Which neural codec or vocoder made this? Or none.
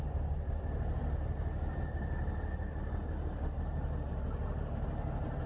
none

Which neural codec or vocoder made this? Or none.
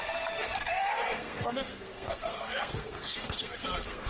codec, SNAC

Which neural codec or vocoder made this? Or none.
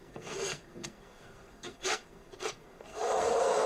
codec, SNAC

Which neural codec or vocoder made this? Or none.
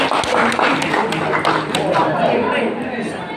none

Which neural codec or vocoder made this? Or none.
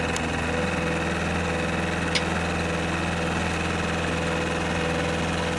none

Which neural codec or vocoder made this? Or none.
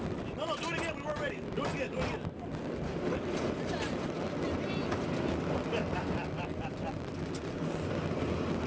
none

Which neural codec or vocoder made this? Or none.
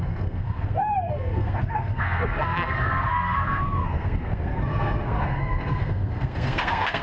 codec, SNAC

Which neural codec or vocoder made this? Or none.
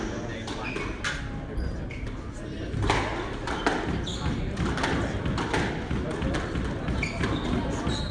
none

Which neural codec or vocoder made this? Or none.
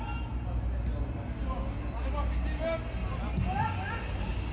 none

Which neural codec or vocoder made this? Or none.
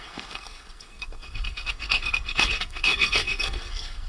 codec, SNAC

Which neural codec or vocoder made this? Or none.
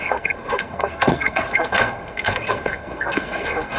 codec, SNAC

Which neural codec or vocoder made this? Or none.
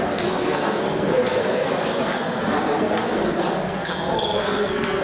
codec, SNAC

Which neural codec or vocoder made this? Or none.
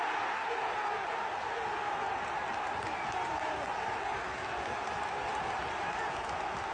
none